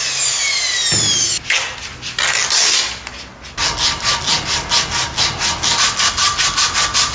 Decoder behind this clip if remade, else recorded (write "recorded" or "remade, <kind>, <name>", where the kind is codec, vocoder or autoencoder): recorded